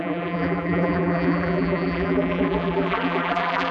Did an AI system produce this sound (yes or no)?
yes